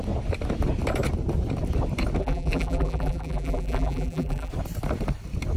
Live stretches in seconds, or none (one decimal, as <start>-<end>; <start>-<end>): 0.0-2.2; 4.5-5.6